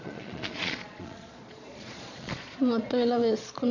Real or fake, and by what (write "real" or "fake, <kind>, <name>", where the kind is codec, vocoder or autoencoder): fake, vocoder, Vocos